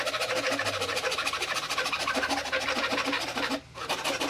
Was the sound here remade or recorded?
recorded